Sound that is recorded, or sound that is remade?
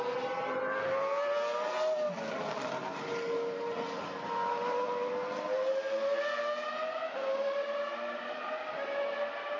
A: recorded